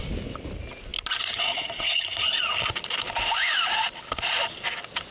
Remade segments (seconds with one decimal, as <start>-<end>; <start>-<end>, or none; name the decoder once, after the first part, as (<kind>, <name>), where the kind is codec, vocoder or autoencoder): none